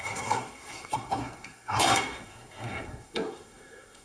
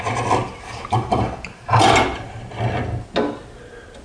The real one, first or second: second